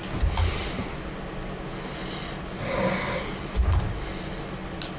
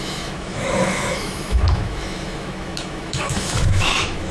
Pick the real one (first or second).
first